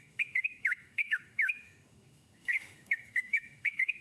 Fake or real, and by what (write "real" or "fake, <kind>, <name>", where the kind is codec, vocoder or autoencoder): fake, autoencoder, DAC-VAE